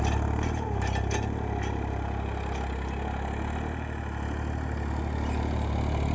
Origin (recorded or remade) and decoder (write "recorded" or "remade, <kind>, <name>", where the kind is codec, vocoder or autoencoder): recorded